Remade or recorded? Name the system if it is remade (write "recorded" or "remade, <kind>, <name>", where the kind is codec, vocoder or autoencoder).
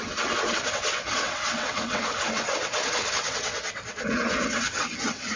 remade, vocoder, WaveNeXt